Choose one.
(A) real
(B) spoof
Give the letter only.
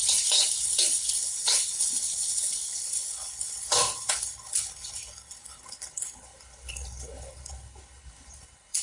B